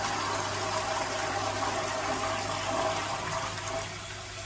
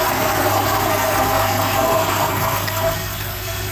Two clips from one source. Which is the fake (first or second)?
second